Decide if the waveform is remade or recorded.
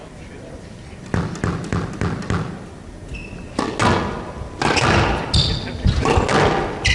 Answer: recorded